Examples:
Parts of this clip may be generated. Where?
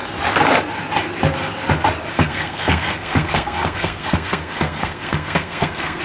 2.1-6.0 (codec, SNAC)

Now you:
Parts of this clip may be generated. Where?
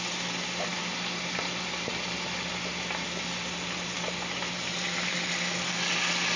none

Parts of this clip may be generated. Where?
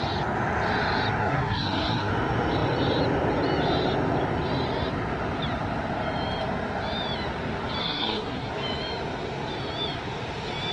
1.2-2.1 (codec, SNAC); 7.8-8.5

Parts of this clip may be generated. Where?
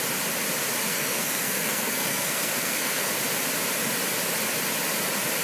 0.9-3.1 (codec, SNAC)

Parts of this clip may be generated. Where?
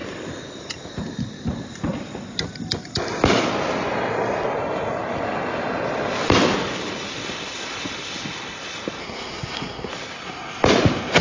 9.0-9.9 (codec, SNAC)